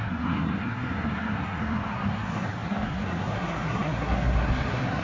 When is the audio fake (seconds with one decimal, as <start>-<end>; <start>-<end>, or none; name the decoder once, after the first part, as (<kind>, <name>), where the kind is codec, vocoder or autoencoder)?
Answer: 0.0-5.0 (codec, SNAC)